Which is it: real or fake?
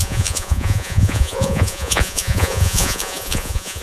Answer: fake